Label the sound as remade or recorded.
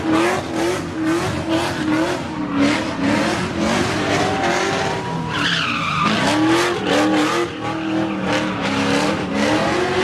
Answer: recorded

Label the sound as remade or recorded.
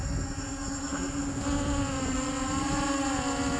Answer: recorded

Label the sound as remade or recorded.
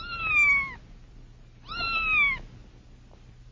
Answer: recorded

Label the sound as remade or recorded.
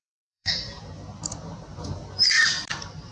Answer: remade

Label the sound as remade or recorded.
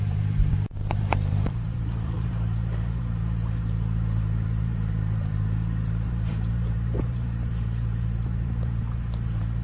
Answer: remade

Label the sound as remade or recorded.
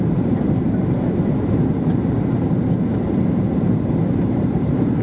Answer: remade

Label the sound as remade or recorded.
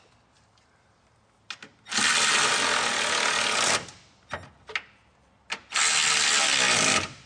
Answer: recorded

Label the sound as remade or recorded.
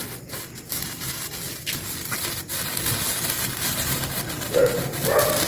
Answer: remade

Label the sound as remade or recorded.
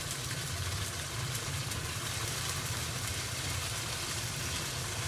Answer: remade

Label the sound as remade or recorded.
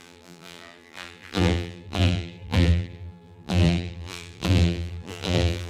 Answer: remade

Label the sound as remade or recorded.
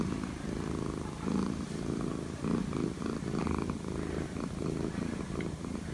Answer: recorded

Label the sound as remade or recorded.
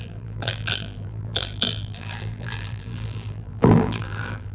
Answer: remade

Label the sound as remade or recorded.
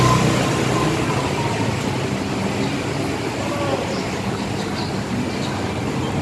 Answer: recorded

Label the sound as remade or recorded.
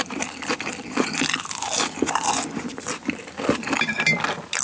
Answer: remade